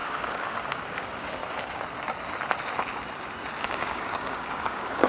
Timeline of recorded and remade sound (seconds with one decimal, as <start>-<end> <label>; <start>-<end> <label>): 0.0-1.4 remade; 1.4-3.6 recorded; 3.6-5.1 remade